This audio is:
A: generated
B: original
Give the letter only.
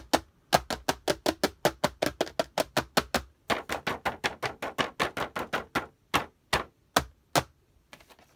B